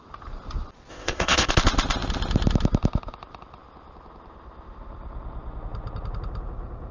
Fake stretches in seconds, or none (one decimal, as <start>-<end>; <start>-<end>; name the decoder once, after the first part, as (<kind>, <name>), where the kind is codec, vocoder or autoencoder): 0.9-1.5 (codec, ZipCodec)